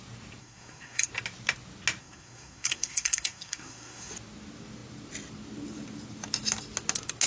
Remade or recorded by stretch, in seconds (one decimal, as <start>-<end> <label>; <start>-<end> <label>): 0.0-0.4 recorded; 0.4-1.1 remade; 1.1-2.0 recorded; 2.0-4.1 remade; 4.1-7.3 recorded